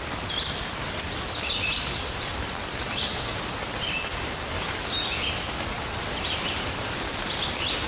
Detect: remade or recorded remade